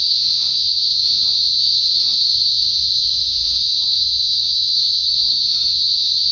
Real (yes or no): no